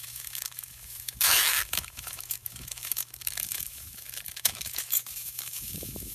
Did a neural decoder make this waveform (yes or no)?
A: yes